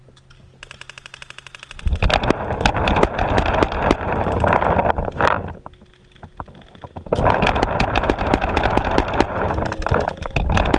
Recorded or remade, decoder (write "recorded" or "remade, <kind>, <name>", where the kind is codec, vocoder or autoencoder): recorded